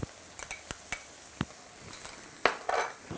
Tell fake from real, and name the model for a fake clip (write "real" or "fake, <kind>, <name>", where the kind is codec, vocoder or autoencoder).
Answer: real